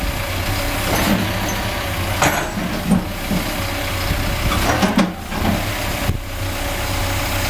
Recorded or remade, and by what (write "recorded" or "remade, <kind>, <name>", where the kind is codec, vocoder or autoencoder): recorded